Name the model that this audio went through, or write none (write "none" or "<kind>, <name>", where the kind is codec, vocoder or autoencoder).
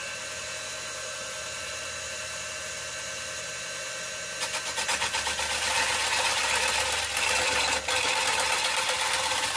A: none